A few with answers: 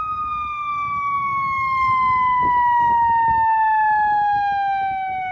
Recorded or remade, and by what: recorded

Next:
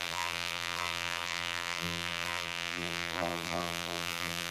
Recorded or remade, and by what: remade, vocoder, BigVGAN v2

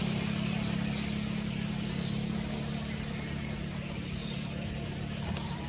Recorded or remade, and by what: recorded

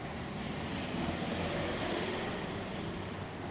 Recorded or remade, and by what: recorded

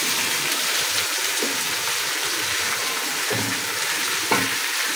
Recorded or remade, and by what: remade, vocoder, BigVGAN v2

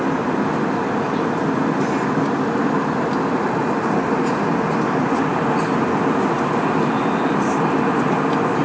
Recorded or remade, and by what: recorded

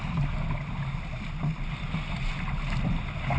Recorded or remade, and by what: recorded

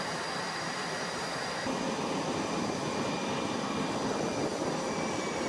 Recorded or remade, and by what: remade, vocoder, BigVGAN v2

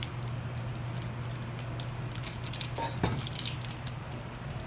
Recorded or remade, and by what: recorded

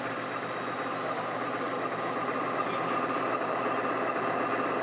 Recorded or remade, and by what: recorded